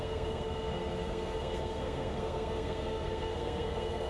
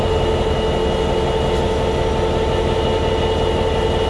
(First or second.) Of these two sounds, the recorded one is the second